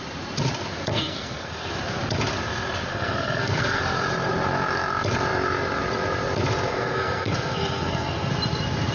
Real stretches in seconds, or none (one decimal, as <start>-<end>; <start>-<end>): 0.0-0.9; 1.7-2.9; 3.8-6.7; 8.3-8.9